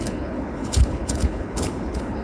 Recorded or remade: remade